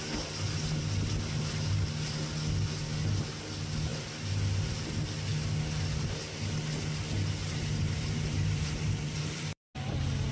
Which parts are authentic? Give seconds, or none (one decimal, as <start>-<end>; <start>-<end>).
0.0-7.4; 9.7-10.3